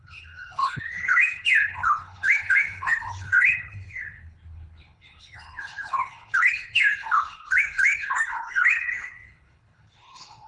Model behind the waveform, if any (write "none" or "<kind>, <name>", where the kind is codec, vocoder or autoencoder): codec, HILCodec